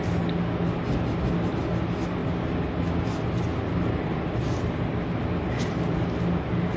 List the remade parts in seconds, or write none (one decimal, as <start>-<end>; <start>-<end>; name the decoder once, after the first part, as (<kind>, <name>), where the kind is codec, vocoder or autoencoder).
none